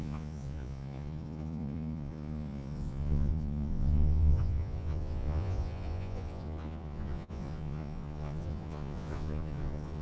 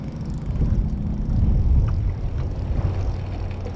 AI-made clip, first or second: first